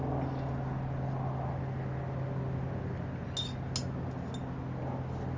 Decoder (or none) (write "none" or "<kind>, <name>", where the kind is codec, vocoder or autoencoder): none